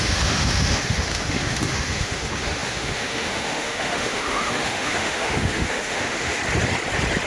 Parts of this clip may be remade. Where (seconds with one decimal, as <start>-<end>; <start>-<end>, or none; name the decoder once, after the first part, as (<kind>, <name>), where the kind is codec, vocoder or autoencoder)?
0.0-6.4 (autoencoder, DAC-VAE)